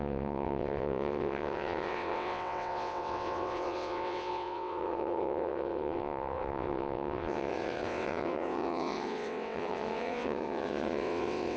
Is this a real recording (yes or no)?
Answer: no